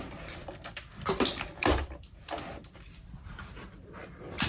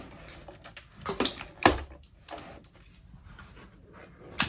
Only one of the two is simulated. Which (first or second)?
first